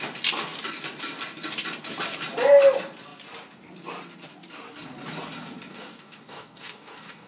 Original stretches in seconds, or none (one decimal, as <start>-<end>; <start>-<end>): 0.0-5.7